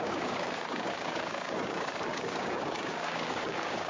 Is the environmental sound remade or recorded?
remade